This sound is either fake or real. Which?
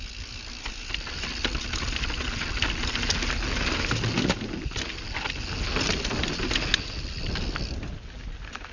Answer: real